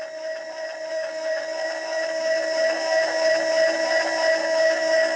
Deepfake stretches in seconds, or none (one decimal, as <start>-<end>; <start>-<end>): 0.9-3.3; 4.4-5.2